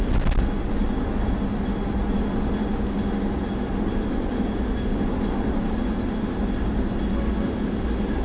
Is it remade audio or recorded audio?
recorded